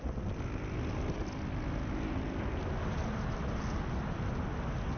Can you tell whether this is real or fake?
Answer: real